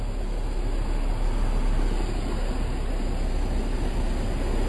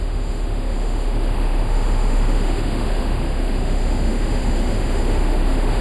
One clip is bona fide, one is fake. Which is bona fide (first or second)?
first